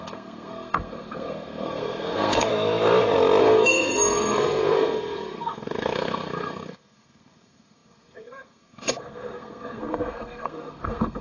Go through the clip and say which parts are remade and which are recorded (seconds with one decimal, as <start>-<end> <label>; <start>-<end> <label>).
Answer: 0.0-2.5 remade; 2.5-3.4 recorded; 3.4-11.2 remade